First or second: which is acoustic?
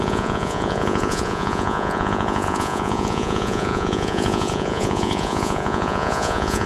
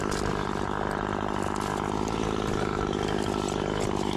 second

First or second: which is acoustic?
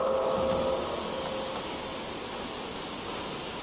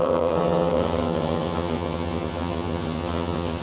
first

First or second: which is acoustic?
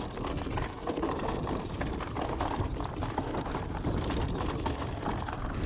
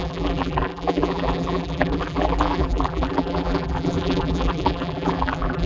first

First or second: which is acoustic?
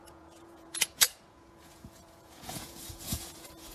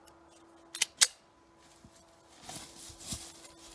second